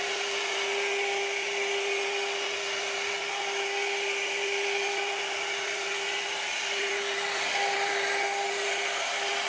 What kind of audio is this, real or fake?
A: real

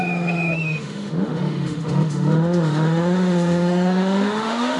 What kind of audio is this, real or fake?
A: fake